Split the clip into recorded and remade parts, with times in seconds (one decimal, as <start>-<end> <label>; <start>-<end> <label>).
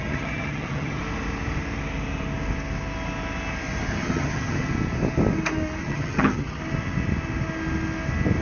0.0-1.0 remade; 1.0-3.9 recorded; 3.9-4.7 remade; 4.7-5.8 recorded; 5.8-6.6 remade; 6.6-8.4 recorded